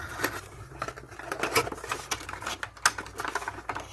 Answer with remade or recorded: recorded